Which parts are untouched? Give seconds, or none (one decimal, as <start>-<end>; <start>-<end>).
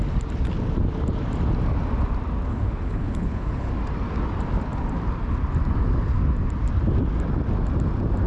0.0-2.5; 3.7-8.3